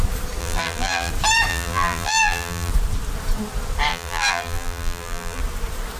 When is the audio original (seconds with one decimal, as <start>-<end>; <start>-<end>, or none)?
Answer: 0.0-0.4; 1.1-1.5; 2.7-3.9; 5.4-6.0